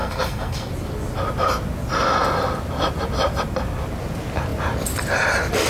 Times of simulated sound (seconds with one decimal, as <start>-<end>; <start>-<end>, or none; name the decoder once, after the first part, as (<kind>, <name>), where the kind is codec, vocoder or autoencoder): 0.0-0.7 (codec, SNAC)